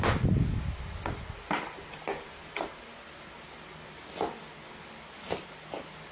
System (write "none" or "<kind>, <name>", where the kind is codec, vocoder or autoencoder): none